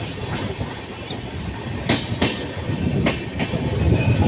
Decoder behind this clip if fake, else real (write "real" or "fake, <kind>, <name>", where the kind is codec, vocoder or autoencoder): real